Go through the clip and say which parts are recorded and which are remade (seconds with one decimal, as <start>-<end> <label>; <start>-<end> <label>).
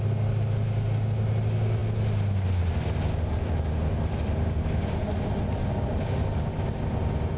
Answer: 0.0-7.4 recorded